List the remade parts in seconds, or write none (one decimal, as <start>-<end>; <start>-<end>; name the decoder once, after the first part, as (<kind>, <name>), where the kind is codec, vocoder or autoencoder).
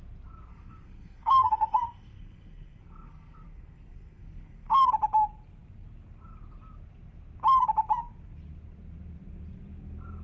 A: 0.5-4.9 (codec, SNAC)